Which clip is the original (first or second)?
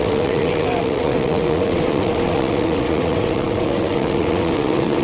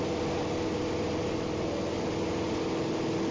second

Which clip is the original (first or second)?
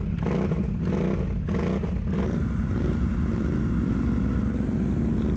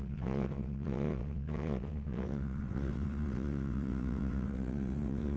first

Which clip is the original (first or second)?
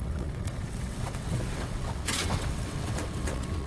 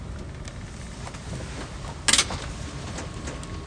second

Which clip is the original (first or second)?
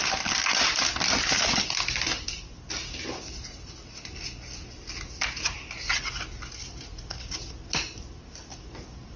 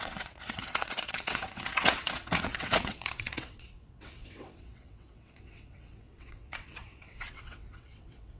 first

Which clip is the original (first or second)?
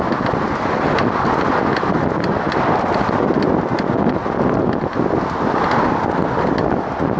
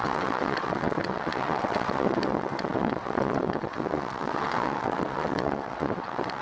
first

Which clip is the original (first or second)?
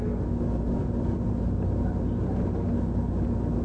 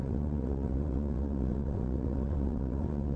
first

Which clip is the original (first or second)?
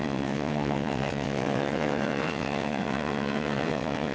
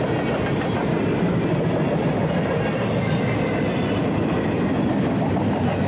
second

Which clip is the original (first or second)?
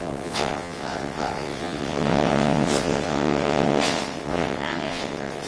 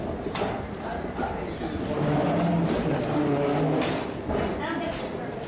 second